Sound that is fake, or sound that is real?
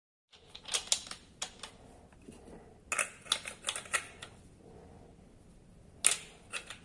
real